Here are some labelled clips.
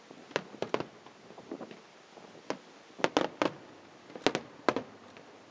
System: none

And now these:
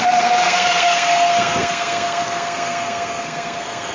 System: codec, SNAC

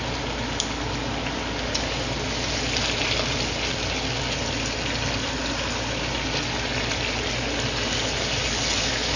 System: none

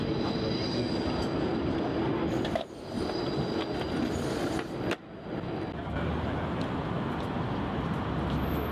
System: none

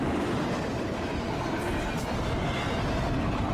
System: none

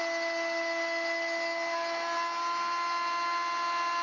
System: none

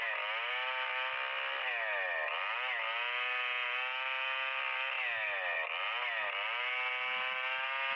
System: none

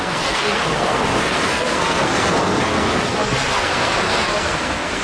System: codec, SNAC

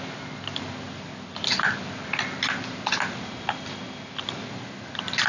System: none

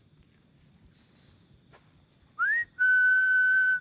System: none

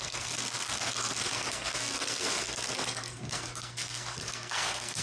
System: codec, SNAC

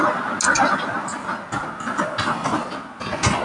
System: none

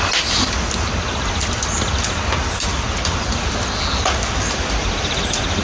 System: none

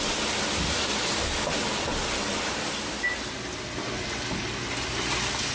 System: none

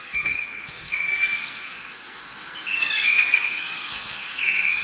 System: codec, SNAC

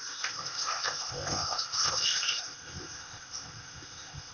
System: codec, ZipCodec